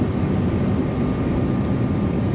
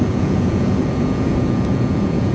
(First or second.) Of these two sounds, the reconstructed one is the second